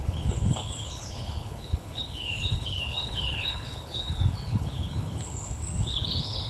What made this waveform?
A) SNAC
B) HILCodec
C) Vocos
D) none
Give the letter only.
B